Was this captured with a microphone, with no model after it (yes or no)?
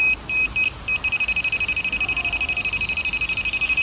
yes